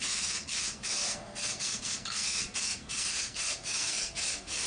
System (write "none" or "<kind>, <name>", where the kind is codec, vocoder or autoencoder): codec, SNAC